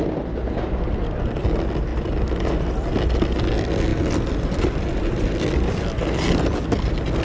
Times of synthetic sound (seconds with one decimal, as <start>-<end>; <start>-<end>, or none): none